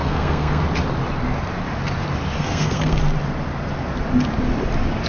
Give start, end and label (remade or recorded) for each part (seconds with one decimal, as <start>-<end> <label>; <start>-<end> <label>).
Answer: 0.0-0.6 remade; 0.6-2.4 recorded; 2.4-3.0 remade; 3.0-5.1 recorded